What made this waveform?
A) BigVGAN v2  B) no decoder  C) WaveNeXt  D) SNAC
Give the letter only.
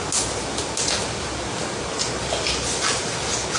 B